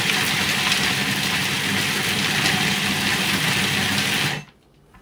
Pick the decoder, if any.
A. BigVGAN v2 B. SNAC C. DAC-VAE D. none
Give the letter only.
D